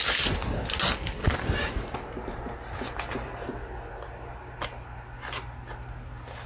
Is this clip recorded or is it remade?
recorded